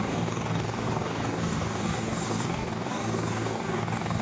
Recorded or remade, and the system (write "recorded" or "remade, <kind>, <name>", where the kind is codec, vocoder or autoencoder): remade, codec, DAC